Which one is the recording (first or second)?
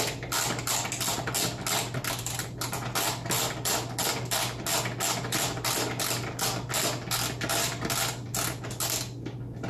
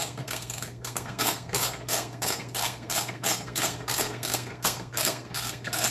first